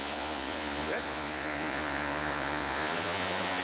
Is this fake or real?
fake